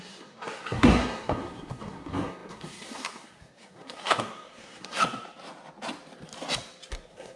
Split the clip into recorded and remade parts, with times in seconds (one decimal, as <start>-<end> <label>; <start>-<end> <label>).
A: 0.0-5.0 remade; 5.0-6.9 recorded; 6.9-7.4 remade